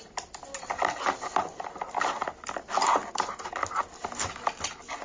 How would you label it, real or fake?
real